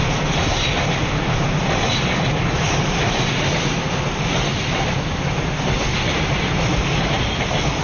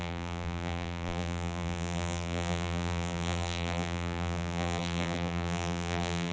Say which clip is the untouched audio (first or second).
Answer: first